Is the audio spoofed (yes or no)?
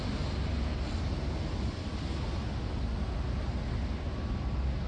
no